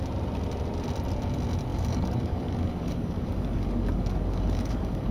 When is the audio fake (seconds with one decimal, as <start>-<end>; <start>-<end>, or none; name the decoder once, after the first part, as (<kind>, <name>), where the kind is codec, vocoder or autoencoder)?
1.7-5.1 (codec, DAC)